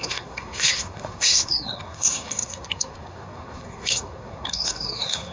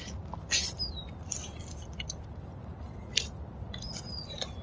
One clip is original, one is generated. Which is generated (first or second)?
first